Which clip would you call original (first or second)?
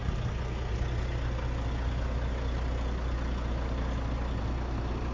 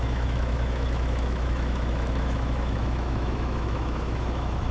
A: first